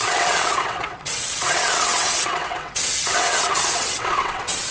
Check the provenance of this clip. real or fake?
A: fake